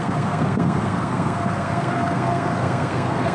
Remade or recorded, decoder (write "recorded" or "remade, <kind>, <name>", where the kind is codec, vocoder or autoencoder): remade, codec, SNAC